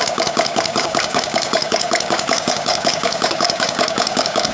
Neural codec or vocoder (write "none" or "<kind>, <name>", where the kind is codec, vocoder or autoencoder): codec, DAC